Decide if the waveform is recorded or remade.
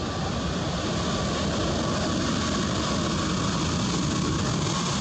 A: recorded